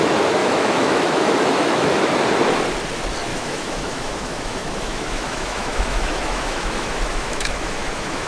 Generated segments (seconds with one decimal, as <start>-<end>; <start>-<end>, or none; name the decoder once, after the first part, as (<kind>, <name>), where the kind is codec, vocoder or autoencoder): 0.4-2.0 (autoencoder, DAC-VAE); 3.3-8.3